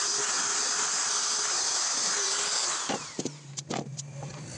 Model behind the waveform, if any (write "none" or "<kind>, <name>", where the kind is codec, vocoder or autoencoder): vocoder, BigVGAN v2